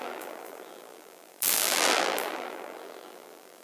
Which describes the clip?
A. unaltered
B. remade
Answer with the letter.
B